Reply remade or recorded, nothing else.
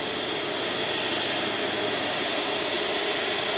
recorded